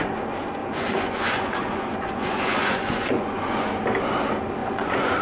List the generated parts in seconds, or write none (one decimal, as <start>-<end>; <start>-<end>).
0.6-3.7; 4.6-5.2